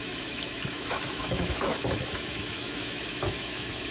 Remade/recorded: remade